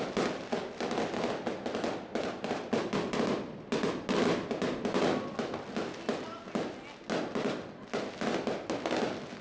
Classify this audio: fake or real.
real